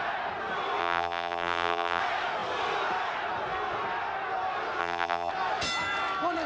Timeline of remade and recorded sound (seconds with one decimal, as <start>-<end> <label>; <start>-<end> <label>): 0.0-0.8 recorded; 0.8-2.0 remade; 2.0-4.8 recorded; 4.8-5.3 remade; 5.3-6.5 recorded